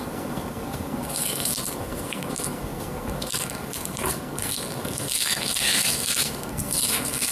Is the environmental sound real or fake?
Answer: fake